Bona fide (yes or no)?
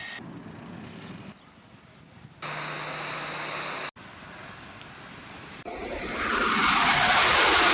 yes